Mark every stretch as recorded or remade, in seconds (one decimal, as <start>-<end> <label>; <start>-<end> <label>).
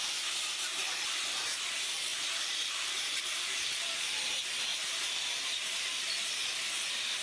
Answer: 0.0-2.1 recorded; 2.1-4.2 remade; 4.2-4.7 recorded; 4.7-6.0 remade; 6.0-7.2 recorded